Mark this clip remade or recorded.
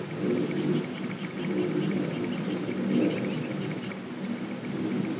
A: recorded